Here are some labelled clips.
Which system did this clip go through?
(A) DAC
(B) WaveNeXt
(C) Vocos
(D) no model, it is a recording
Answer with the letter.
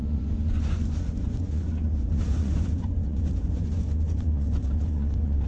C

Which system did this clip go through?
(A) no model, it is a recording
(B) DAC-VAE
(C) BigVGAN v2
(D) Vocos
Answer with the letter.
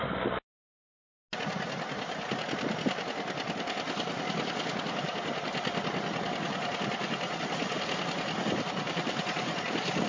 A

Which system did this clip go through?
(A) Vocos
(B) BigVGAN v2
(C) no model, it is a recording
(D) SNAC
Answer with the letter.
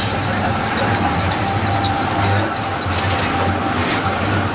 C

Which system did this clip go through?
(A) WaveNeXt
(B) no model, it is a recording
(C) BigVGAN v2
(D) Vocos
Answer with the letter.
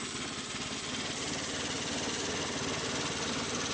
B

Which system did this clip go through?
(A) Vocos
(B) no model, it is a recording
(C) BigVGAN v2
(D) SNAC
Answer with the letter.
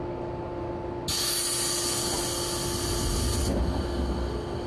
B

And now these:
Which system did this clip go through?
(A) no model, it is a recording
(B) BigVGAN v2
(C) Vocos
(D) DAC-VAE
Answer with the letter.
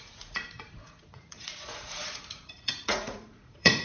C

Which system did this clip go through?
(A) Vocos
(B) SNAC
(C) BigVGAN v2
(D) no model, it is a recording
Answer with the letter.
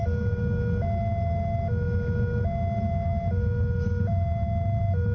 D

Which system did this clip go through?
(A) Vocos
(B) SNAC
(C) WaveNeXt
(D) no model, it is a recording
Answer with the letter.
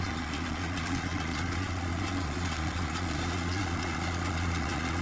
A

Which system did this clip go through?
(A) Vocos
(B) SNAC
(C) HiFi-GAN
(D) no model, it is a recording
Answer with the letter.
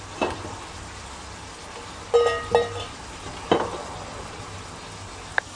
D